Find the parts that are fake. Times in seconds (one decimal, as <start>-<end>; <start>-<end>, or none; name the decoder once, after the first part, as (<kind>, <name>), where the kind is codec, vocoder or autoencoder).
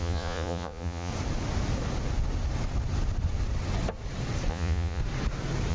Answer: 0.0-1.1 (vocoder, Vocos); 4.5-5.0